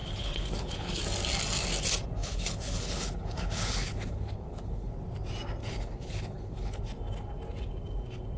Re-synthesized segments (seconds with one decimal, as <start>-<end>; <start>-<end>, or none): 0.0-1.0; 2.2-4.9; 5.6-6.8